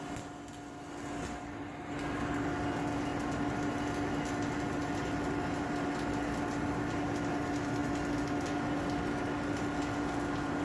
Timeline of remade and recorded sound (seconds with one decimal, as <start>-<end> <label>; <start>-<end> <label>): 0.0-10.6 recorded